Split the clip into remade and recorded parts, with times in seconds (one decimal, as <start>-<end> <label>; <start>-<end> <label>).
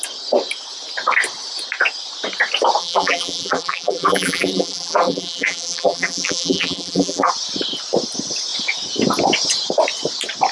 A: 0.0-2.8 recorded; 2.8-7.3 remade; 7.3-10.5 recorded